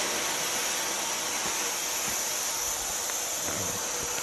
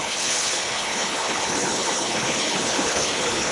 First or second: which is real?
first